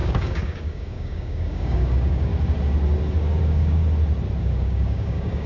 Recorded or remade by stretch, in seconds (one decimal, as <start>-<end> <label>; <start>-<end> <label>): 0.0-2.3 remade; 2.3-3.4 recorded; 3.4-3.8 remade; 3.8-4.4 recorded; 4.4-5.5 remade

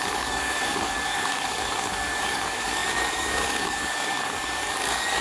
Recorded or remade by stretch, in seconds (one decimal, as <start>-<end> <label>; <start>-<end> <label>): 0.0-5.2 remade

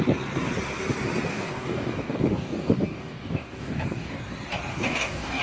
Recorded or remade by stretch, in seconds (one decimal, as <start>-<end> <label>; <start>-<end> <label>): 0.0-1.3 recorded; 1.3-4.2 remade; 4.2-4.7 recorded; 4.7-5.4 remade

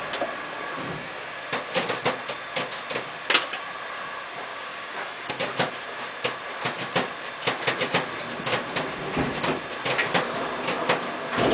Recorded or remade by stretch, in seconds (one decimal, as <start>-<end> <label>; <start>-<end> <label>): 0.0-4.5 recorded; 4.5-5.3 remade; 5.3-11.5 recorded

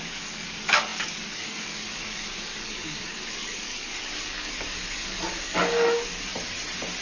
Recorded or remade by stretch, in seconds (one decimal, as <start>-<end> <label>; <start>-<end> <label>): 0.0-6.3 remade; 6.3-7.0 recorded

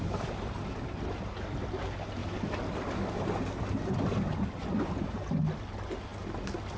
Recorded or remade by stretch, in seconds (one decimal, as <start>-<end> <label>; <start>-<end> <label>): 0.0-6.8 recorded

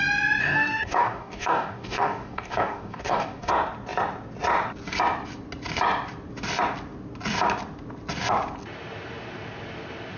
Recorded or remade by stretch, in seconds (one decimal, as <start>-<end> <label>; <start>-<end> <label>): 0.0-0.4 recorded; 0.4-3.5 remade; 3.5-10.2 recorded

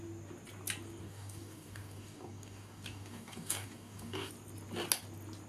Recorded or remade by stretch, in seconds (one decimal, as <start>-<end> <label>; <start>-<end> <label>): 0.0-1.0 recorded; 1.0-4.3 remade; 4.3-5.5 recorded